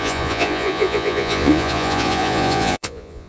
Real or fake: fake